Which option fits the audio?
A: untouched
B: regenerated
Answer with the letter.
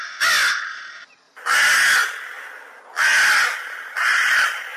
A